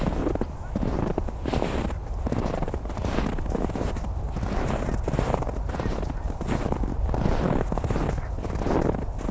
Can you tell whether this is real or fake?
real